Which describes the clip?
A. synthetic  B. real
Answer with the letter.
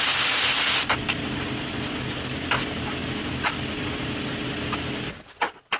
B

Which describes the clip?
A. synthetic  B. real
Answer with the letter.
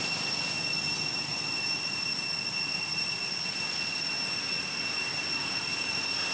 B